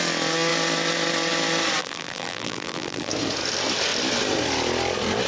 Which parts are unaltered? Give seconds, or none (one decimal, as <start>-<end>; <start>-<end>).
0.0-1.8; 3.1-5.3